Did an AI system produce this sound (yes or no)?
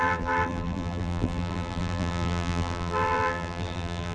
yes